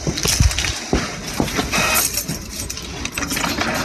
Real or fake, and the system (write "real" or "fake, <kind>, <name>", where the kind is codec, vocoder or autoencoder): real